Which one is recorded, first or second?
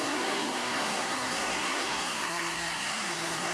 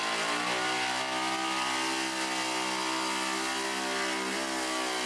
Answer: second